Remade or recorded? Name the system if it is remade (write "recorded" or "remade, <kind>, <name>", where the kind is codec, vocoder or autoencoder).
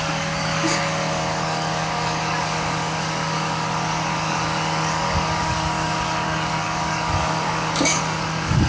remade, codec, DAC